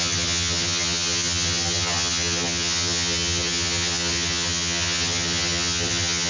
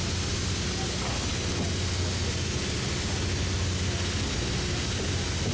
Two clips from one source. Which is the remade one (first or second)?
first